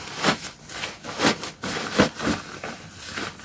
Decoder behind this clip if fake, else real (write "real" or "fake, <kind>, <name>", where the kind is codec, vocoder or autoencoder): real